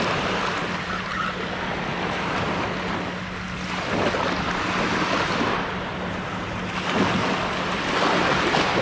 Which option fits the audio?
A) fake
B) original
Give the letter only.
B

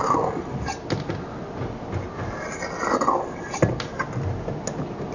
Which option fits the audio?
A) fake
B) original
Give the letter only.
B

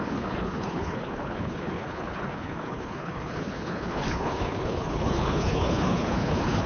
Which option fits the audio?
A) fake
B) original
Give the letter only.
A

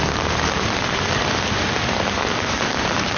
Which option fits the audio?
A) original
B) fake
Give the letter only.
A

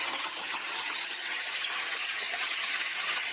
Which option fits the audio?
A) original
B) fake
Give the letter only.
B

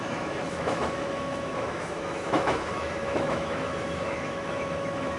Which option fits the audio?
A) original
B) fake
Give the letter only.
B